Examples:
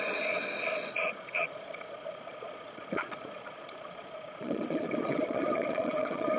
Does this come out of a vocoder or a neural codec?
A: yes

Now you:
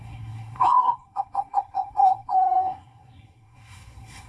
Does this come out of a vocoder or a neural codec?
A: yes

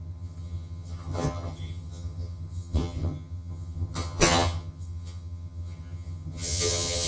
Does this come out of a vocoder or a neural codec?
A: yes